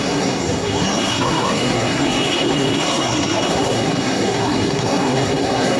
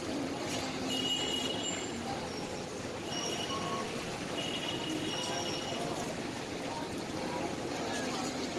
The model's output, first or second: first